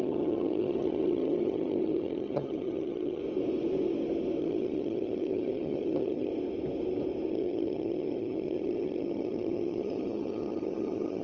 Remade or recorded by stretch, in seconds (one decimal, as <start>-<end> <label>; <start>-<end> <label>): 0.0-3.2 remade; 3.2-4.4 recorded; 4.4-6.3 remade; 6.3-7.3 recorded; 7.3-11.2 remade